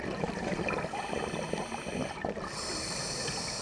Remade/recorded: recorded